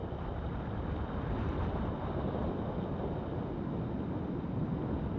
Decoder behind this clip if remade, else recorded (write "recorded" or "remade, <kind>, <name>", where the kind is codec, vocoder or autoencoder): recorded